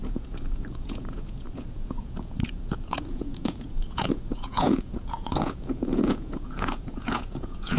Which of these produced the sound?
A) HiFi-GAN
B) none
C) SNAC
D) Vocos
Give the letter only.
D